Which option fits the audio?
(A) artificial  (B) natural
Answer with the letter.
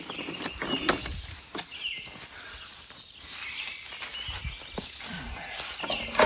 B